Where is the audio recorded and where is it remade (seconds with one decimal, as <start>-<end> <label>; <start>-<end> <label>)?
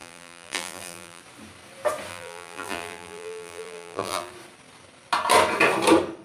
0.0-1.2 remade; 1.2-2.1 recorded; 2.1-4.3 remade; 4.3-6.2 recorded